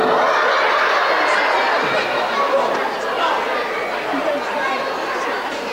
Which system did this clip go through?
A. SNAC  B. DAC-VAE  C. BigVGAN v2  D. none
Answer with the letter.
D